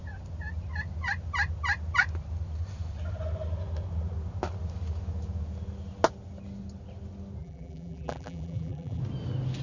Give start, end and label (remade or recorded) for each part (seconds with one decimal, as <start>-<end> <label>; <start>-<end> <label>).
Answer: 0.0-7.4 recorded; 7.4-9.0 remade; 9.0-9.6 recorded